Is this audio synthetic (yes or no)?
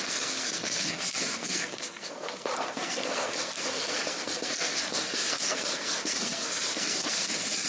yes